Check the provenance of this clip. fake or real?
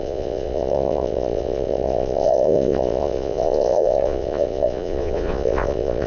fake